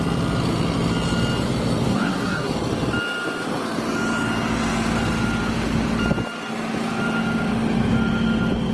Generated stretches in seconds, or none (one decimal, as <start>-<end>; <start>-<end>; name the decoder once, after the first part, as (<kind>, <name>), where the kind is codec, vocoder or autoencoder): 1.9-2.5 (codec, SNAC)